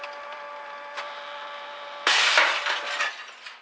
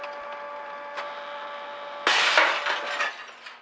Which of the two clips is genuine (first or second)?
second